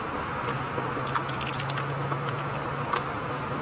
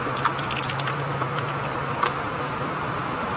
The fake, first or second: second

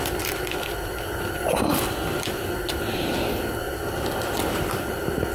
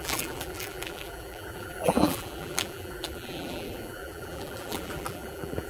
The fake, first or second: second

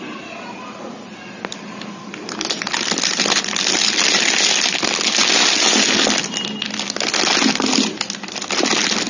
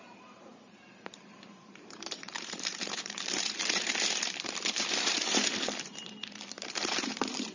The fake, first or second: second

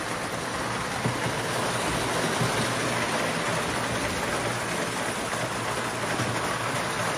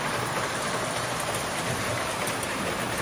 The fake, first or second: second